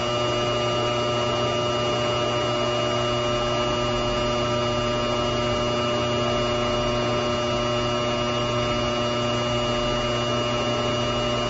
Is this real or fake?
real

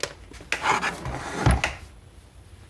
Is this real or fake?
real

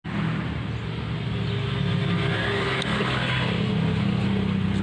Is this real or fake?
real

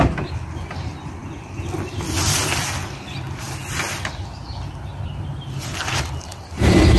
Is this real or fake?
real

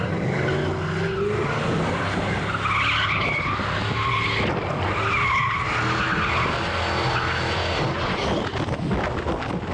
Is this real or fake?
real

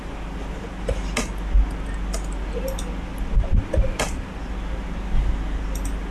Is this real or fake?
real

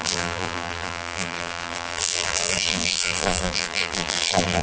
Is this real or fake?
fake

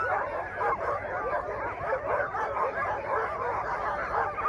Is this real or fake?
fake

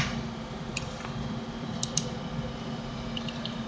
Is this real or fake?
fake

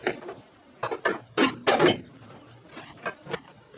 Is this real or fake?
fake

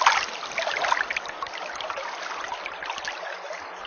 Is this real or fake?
real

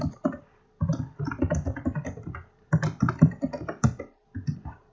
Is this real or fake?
fake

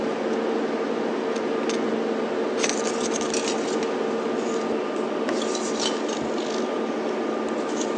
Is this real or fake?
real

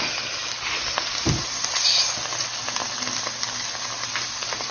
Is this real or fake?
real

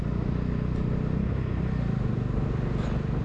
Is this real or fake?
real